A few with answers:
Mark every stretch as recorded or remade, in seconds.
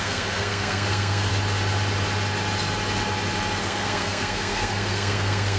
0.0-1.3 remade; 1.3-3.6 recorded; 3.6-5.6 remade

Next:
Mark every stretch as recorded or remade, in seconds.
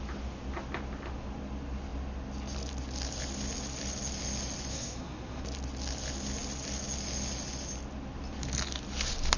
0.0-4.7 recorded; 4.7-5.4 remade; 5.4-9.4 recorded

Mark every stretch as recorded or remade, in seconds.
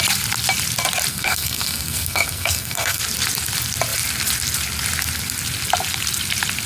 0.0-1.1 recorded; 1.1-3.0 remade; 3.0-6.7 recorded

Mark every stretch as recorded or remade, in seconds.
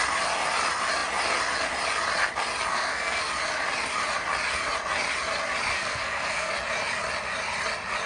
0.0-2.7 recorded; 2.7-3.3 remade; 3.3-5.7 recorded; 5.7-6.5 remade; 6.5-8.1 recorded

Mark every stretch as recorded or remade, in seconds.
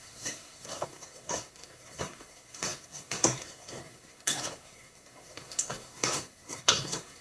0.0-7.2 remade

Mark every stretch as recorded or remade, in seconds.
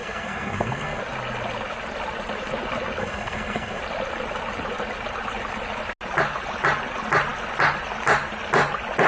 0.0-1.0 remade; 1.0-3.0 recorded; 3.0-3.8 remade; 3.8-9.1 recorded